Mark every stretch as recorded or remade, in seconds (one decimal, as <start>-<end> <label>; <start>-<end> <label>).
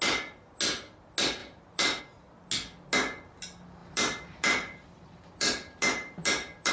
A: 0.0-1.4 recorded; 1.4-2.0 remade; 2.0-3.8 recorded; 3.8-6.7 remade